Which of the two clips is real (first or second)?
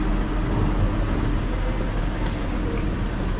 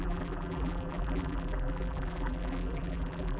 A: first